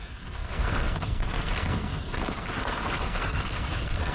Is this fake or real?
fake